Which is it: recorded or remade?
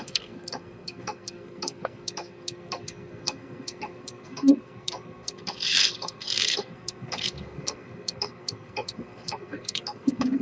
remade